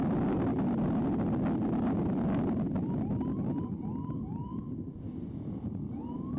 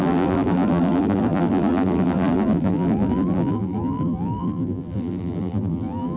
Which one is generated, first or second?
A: second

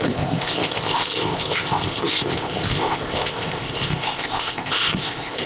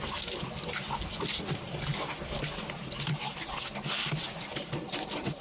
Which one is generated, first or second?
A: first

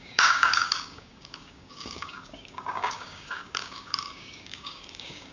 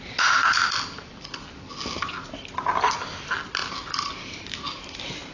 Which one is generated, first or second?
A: first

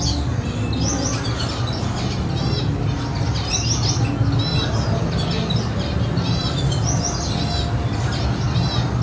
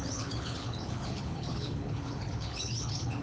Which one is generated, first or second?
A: second